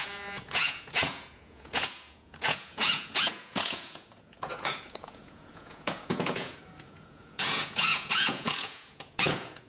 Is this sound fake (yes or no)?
yes